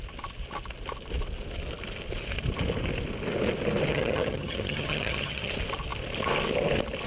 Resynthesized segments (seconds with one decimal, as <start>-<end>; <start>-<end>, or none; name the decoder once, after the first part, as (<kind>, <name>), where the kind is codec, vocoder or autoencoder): 3.9-5.5 (vocoder, HiFi-GAN)